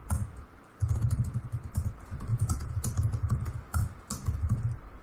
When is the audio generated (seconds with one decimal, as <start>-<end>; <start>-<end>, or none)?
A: 2.3-2.9